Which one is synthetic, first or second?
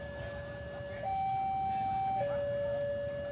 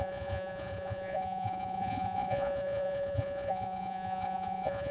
second